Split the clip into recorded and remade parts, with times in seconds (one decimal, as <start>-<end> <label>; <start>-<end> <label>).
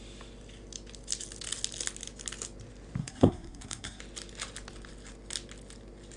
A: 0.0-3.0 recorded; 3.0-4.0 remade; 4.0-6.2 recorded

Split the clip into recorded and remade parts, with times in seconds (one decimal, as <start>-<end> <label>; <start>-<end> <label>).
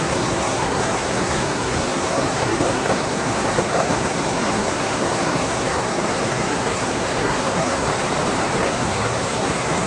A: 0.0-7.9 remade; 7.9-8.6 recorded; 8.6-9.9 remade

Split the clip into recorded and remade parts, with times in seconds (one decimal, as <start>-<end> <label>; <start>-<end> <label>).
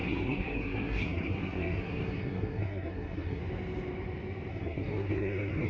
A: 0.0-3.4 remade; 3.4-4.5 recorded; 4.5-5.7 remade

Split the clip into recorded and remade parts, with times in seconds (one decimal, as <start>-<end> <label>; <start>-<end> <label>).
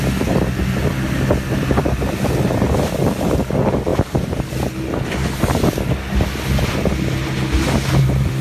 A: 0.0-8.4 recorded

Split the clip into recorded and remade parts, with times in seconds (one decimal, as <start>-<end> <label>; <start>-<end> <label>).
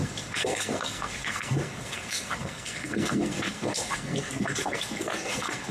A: 0.0-5.7 remade